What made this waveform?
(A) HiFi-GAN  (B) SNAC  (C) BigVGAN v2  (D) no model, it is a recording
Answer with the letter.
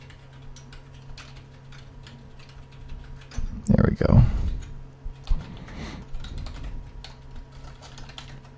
D